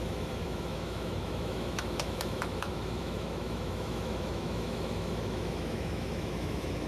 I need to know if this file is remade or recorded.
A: remade